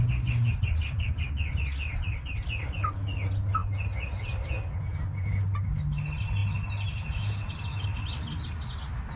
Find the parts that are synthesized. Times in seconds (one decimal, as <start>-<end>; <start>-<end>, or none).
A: none